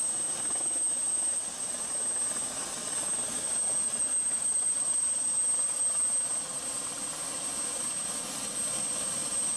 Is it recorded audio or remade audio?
recorded